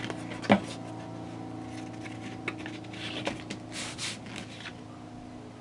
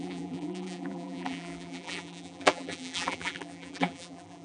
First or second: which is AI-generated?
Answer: second